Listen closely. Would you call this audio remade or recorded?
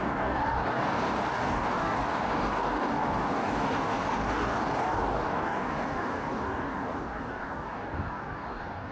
remade